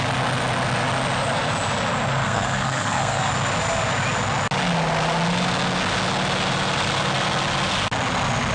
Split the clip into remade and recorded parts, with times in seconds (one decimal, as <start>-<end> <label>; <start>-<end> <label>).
0.0-2.2 recorded; 2.2-3.3 remade; 3.3-8.5 recorded